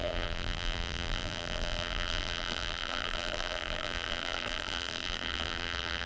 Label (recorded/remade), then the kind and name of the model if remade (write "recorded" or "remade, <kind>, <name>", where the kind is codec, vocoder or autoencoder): remade, vocoder, BigVGAN v2